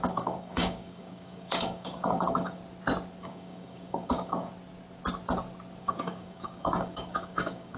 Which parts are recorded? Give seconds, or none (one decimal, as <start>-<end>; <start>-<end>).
2.6-3.2; 4.5-5.8